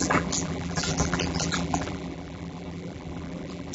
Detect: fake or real fake